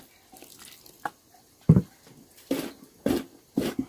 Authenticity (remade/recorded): recorded